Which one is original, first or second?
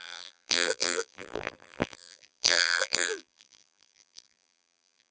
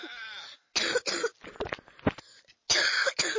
second